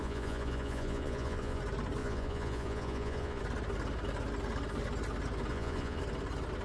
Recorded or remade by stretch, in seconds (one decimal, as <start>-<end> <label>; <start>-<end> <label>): 0.0-1.6 remade; 1.6-2.0 recorded; 2.0-3.4 remade; 3.4-5.5 recorded; 5.5-6.0 remade; 6.0-6.6 recorded